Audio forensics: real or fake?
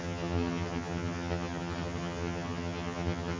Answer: fake